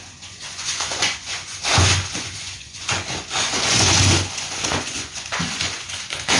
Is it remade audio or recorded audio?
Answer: remade